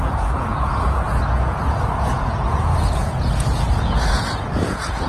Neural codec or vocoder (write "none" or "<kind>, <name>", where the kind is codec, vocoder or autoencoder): vocoder, Vocos